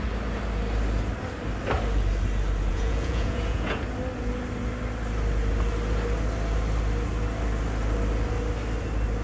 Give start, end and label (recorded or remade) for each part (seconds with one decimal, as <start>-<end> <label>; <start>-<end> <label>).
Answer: 0.0-2.7 recorded; 2.7-3.8 remade; 3.8-9.2 recorded